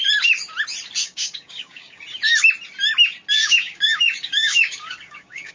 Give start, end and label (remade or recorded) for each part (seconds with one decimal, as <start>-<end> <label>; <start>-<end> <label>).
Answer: 0.0-1.0 recorded; 1.0-2.0 remade; 2.0-3.4 recorded; 3.4-5.5 remade